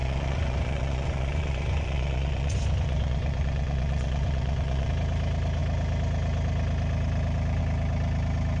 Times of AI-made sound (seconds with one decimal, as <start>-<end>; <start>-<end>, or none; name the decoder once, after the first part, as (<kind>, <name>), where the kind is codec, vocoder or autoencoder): 0.0-4.9 (vocoder, Vocos)